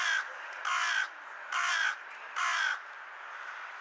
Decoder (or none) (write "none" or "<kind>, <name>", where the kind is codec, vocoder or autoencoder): vocoder, BigVGAN v2